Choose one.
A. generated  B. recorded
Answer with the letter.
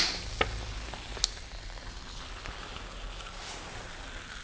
B